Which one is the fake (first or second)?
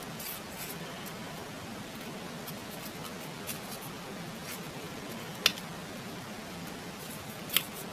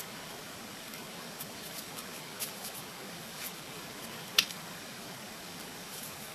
second